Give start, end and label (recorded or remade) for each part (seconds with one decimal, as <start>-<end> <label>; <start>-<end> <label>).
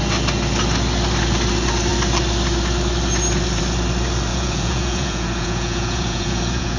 0.0-4.3 recorded; 4.3-6.8 remade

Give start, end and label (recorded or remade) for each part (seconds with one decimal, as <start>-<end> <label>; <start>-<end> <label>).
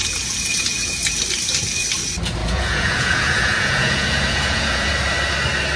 0.0-1.2 remade; 1.2-2.4 recorded; 2.4-4.9 remade; 4.9-5.8 recorded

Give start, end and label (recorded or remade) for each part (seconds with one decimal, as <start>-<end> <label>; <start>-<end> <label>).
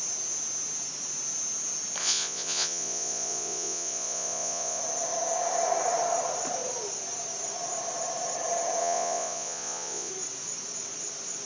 0.0-2.0 recorded; 2.0-4.8 remade; 4.8-8.8 recorded; 8.8-10.1 remade; 10.1-11.5 recorded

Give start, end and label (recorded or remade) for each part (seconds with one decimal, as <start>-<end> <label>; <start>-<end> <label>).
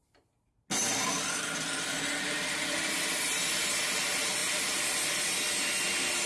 0.0-6.3 recorded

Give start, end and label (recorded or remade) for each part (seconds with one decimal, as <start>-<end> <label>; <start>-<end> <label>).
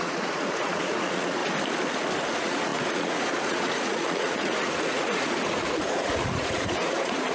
0.0-1.4 remade; 1.4-2.3 recorded; 2.3-7.3 remade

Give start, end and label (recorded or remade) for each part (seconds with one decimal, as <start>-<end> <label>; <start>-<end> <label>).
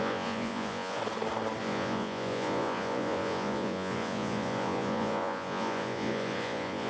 0.0-1.0 remade; 1.0-1.6 recorded; 1.6-6.9 remade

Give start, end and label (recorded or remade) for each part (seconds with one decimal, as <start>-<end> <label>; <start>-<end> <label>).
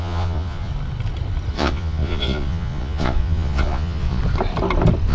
0.0-0.7 remade; 0.7-1.5 recorded; 1.5-4.2 remade; 4.2-5.1 recorded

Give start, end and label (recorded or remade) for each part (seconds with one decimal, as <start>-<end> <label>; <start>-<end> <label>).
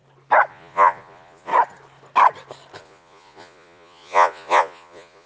0.0-0.5 recorded; 0.5-1.5 remade; 1.5-2.8 recorded; 2.8-5.3 remade